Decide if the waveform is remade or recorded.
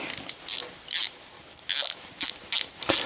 recorded